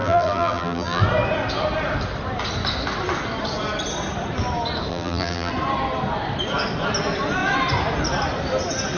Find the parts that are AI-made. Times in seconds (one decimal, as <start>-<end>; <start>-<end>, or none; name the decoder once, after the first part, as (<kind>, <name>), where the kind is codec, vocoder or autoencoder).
0.0-1.0 (vocoder, BigVGAN v2); 4.9-5.5